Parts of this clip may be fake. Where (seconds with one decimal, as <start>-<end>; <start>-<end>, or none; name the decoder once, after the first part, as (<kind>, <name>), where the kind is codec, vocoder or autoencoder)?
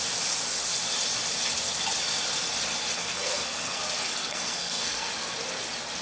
3.0-3.8 (codec, SNAC); 4.2-5.1